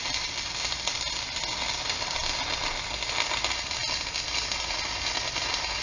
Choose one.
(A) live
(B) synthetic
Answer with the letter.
A